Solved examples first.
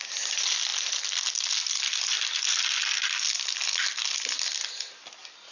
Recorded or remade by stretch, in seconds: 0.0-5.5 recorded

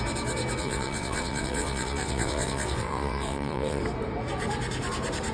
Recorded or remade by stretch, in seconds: 0.0-0.6 recorded; 0.6-3.8 remade; 3.8-5.3 recorded

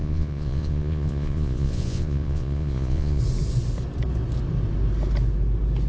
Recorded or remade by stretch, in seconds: 0.0-3.2 remade; 3.2-5.9 recorded